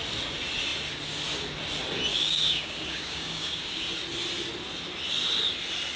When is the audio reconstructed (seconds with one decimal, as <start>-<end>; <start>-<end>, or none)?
2.1-3.8